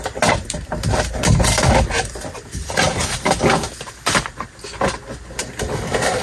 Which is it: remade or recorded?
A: recorded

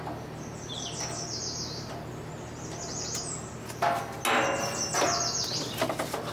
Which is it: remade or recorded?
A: recorded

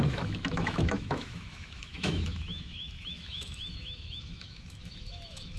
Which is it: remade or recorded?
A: remade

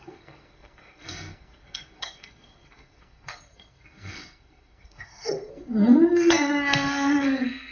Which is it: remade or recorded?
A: remade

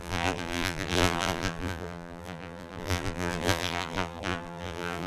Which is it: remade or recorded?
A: remade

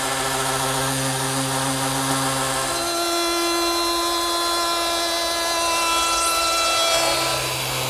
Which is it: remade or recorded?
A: recorded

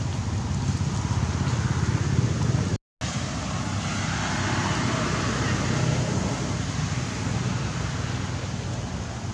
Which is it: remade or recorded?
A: recorded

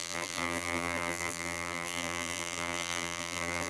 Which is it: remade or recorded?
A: remade